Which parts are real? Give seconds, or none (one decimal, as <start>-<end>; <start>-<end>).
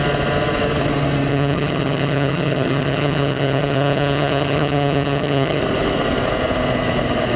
0.0-1.3; 5.6-7.4